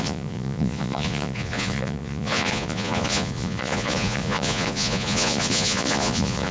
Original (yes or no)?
no